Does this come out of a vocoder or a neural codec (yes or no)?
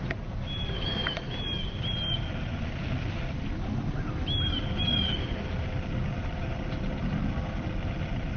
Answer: no